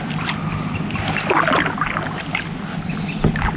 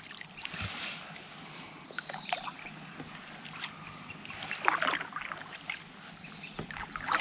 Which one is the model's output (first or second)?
second